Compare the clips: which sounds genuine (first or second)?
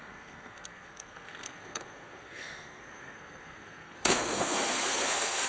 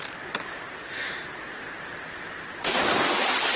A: second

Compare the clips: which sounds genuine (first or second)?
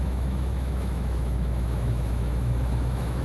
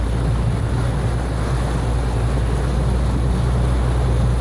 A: second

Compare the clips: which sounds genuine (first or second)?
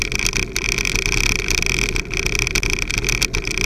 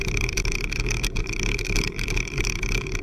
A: first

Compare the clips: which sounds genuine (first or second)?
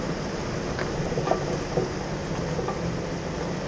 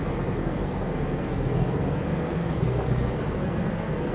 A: first